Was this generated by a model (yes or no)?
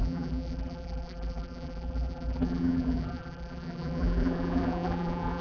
yes